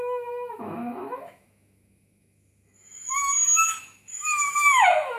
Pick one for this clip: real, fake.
fake